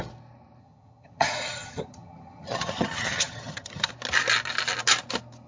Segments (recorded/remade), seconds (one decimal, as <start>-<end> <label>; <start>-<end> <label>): 0.0-0.6 recorded; 0.6-3.9 remade; 3.9-5.5 recorded